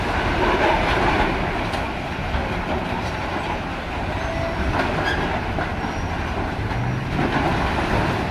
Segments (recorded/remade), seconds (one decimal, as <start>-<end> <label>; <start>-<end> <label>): 0.0-2.2 recorded; 2.2-2.8 remade; 2.8-3.2 recorded; 3.2-4.1 remade; 4.1-8.3 recorded